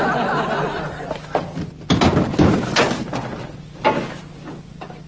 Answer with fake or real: real